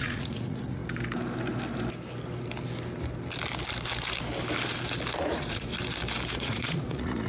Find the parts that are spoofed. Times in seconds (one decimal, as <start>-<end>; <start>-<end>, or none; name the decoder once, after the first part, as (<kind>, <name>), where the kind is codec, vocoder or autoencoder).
0.0-0.8 (vocoder, Vocos); 5.2-5.7; 6.3-7.3